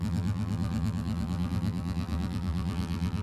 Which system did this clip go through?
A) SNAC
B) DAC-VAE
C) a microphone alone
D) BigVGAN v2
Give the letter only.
D